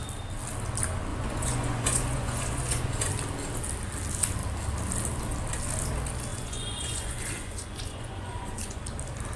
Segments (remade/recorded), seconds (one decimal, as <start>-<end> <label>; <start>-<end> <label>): 0.0-1.1 recorded; 1.1-3.1 remade; 3.1-6.3 recorded; 6.3-8.8 remade; 8.8-9.4 recorded